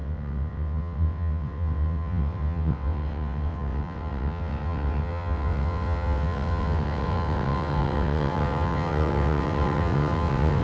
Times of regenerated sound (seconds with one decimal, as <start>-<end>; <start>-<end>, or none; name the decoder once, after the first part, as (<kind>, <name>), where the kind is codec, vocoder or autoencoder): 0.0-10.6 (vocoder, WaveNeXt)